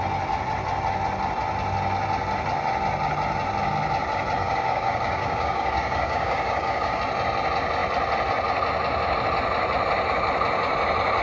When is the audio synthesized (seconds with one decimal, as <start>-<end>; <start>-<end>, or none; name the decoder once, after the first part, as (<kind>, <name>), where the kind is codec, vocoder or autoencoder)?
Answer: 4.4-7.0 (codec, DAC)